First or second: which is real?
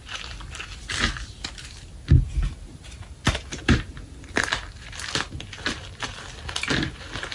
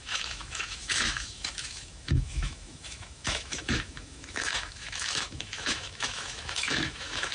first